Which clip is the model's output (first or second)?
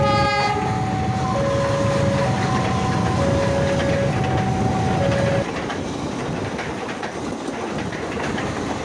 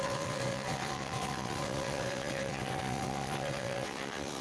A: second